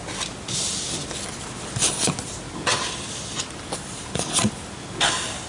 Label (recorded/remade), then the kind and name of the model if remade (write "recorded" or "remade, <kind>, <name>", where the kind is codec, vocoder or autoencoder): recorded